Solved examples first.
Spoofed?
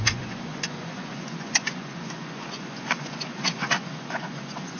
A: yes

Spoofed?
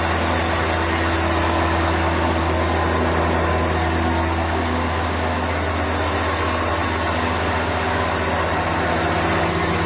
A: no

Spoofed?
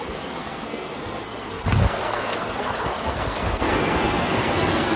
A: yes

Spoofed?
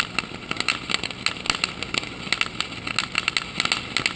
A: no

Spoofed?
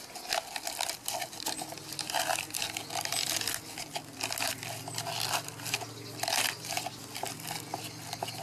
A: no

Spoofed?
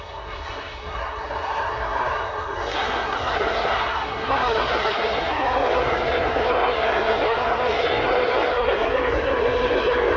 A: yes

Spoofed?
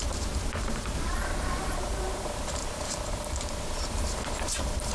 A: yes